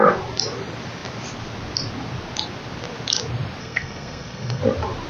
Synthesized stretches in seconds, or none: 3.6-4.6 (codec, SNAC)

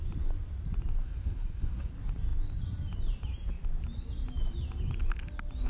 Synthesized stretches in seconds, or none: 1.0-1.9 (codec, SNAC)

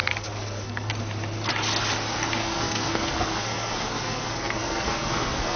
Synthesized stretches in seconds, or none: 0.0-0.9 (codec, SNAC); 2.4-5.6

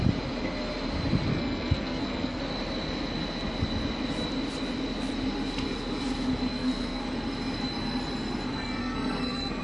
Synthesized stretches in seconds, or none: 1.3-2.4 (codec, SNAC); 6.5-7.0; 8.8-9.6